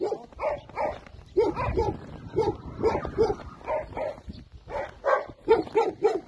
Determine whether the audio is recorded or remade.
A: recorded